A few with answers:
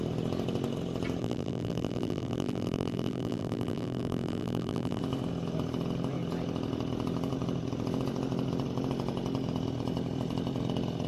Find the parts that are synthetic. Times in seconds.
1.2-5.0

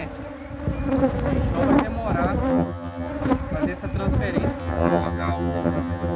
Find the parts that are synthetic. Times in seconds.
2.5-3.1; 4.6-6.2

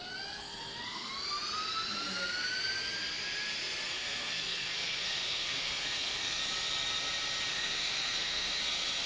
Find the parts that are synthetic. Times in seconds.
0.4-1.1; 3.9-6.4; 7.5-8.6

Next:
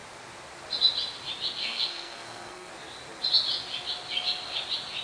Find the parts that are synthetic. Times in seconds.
1.6-2.7

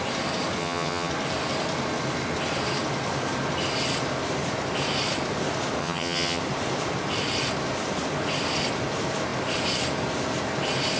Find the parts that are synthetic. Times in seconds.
0.6-1.1; 5.8-6.4

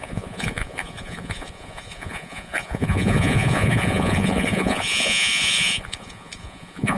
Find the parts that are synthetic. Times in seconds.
0.0-7.0

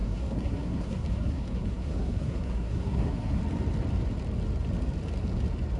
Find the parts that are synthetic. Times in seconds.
0.0-3.4

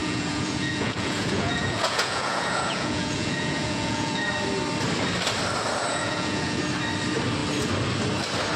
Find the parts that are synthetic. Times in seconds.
0.0-4.3; 5.9-6.6